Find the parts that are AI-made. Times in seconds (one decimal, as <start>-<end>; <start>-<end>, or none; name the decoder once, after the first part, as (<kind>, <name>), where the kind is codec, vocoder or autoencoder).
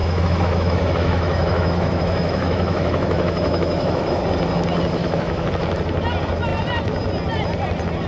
0.0-4.2 (autoencoder, DAC-VAE); 5.0-5.5